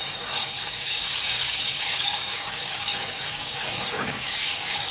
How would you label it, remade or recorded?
remade